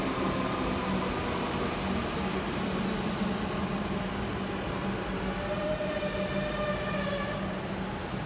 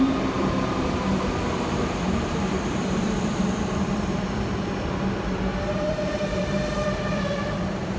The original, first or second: first